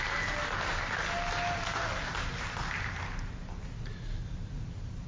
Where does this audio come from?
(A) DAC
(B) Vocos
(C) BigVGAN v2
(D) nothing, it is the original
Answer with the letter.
D